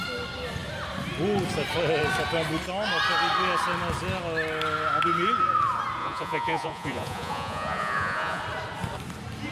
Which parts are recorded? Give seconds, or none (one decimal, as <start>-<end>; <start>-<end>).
0.0-6.0; 8.4-9.5